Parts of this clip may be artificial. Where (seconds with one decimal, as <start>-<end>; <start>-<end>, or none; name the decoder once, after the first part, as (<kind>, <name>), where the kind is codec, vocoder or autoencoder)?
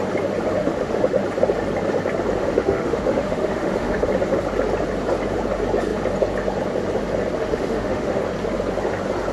0.6-1.2 (autoencoder, DAC-VAE); 2.4-4.1; 7.4-8.2